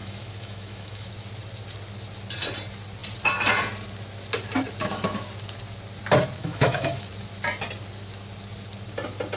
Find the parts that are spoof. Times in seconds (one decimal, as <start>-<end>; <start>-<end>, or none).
0.0-1.1; 6.4-7.1